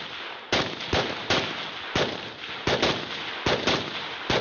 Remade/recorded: recorded